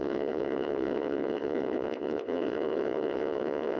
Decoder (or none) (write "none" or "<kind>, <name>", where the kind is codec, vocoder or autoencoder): vocoder, WaveNeXt